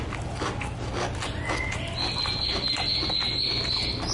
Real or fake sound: real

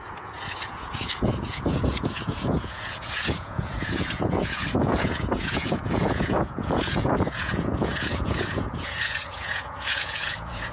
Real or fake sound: fake